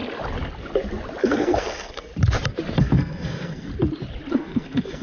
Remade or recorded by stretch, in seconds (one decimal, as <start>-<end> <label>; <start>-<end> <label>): 0.0-1.2 recorded; 1.2-2.1 remade; 2.1-2.8 recorded; 2.8-3.7 remade; 3.7-4.3 recorded; 4.3-5.0 remade